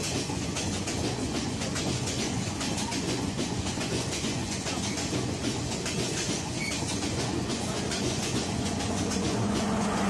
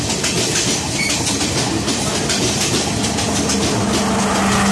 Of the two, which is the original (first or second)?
second